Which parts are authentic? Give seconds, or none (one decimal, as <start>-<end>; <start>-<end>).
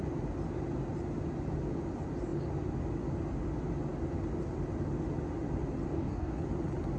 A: 0.0-5.9; 6.4-7.0